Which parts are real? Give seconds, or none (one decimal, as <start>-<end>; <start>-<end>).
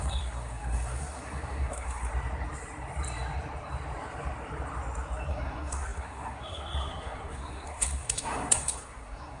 2.1-5.3